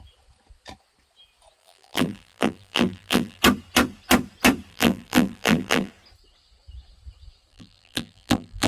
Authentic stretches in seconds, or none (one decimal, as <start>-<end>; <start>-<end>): 0.0-1.6; 3.4-4.7; 5.9-7.5